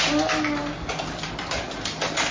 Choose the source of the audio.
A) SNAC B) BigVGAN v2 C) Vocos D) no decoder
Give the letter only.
D